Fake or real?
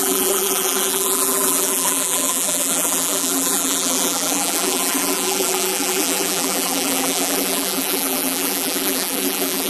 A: fake